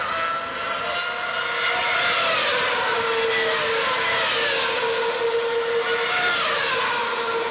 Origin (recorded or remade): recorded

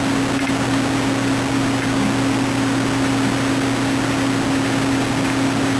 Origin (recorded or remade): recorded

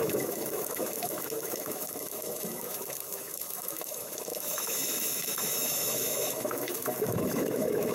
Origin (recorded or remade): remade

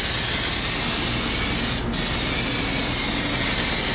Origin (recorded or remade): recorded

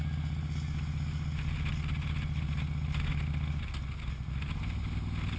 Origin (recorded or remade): recorded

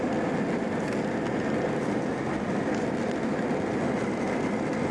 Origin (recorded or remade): recorded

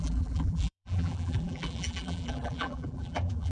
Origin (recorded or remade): remade